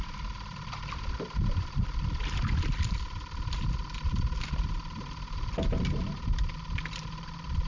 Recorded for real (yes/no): yes